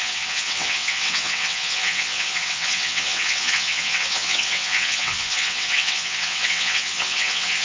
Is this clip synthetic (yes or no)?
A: yes